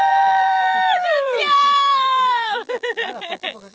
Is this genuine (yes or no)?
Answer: no